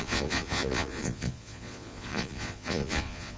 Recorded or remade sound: remade